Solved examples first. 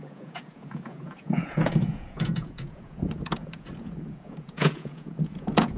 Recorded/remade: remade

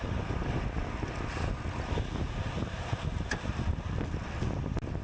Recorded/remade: recorded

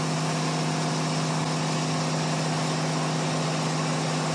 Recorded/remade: recorded